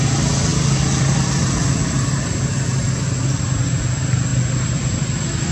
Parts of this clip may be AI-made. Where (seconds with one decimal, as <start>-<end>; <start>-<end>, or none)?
none